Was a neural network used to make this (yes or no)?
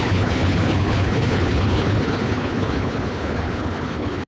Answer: yes